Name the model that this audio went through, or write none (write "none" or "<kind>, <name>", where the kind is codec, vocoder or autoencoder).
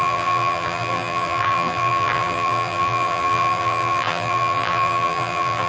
vocoder, BigVGAN v2